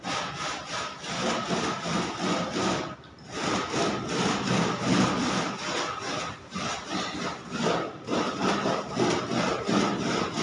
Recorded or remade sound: recorded